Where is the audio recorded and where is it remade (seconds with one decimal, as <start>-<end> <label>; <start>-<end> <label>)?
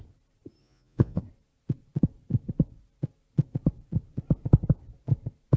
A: 0.0-0.6 recorded; 0.6-1.2 remade; 1.2-5.6 recorded